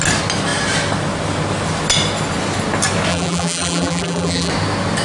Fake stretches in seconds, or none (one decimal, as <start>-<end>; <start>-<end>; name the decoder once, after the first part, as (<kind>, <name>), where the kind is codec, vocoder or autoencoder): 3.1-4.5 (vocoder, BigVGAN v2)